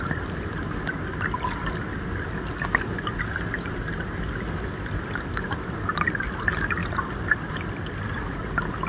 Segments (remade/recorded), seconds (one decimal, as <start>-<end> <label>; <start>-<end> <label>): 0.0-6.8 recorded; 6.8-7.5 remade; 7.5-8.9 recorded